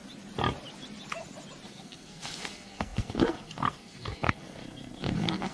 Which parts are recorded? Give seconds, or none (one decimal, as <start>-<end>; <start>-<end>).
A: 0.0-1.7

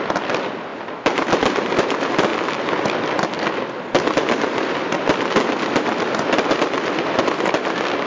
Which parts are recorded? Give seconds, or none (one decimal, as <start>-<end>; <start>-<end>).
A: 0.0-8.1

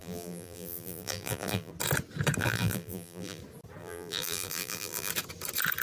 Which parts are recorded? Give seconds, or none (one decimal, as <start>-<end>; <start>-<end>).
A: 1.7-2.4; 3.4-3.8; 5.1-5.8

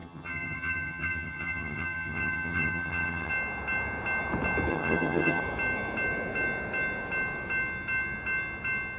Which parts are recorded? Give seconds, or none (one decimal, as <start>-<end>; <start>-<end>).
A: 3.3-4.7; 5.4-9.0

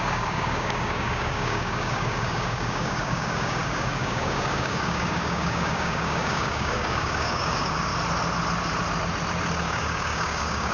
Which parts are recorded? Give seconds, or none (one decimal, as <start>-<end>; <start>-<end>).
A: 7.9-9.6

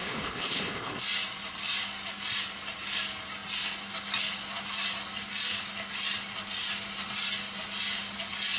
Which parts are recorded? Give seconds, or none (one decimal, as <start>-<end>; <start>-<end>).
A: 1.0-8.6

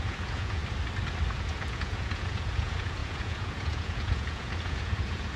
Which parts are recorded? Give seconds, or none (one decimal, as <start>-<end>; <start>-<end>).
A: 0.6-1.3

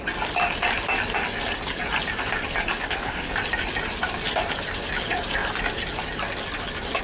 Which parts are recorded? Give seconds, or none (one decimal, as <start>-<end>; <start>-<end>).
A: 0.0-2.7; 3.3-7.0